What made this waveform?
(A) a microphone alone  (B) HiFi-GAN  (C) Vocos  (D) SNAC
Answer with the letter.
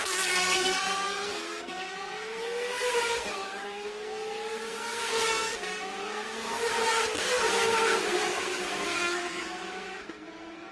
D